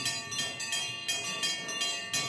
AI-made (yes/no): no